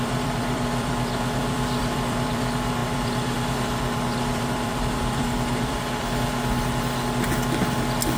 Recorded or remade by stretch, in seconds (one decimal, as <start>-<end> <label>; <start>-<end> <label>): 0.0-6.3 remade; 6.3-8.2 recorded